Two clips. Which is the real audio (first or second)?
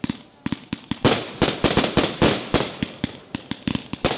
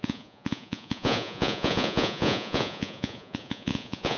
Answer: first